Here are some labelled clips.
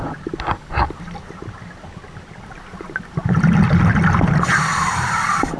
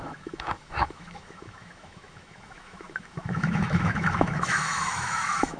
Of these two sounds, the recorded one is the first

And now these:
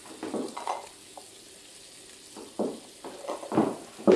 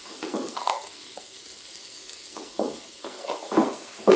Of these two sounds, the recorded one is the first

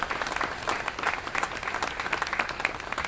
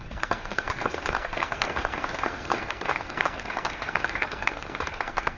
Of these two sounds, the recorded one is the first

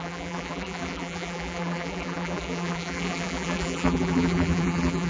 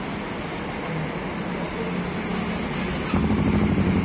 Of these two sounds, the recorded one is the second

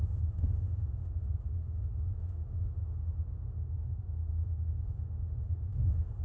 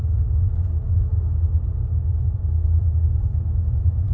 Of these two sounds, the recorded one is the second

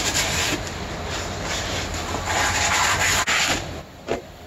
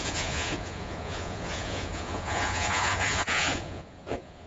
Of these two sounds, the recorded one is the first